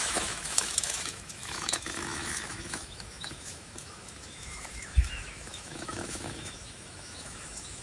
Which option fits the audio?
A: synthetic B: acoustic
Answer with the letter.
A